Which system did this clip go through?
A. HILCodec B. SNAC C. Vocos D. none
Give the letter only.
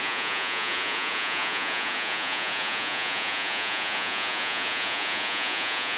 C